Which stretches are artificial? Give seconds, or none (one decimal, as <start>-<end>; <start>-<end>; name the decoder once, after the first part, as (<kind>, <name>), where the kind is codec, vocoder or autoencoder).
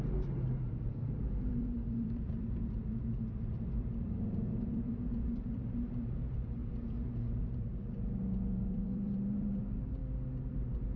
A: 0.0-10.0 (vocoder, BigVGAN v2); 10.5-11.0